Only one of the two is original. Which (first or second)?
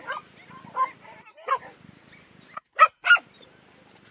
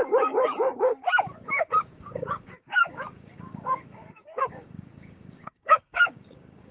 first